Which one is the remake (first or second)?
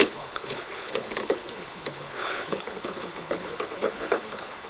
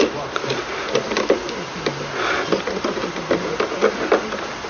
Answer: first